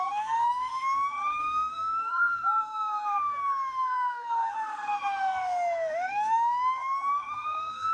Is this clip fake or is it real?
fake